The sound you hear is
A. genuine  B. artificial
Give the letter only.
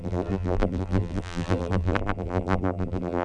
B